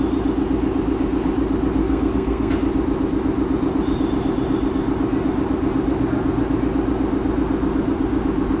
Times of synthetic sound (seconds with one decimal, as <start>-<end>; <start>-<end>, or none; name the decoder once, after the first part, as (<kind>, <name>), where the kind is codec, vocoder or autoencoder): 1.8-2.5 (codec, SNAC)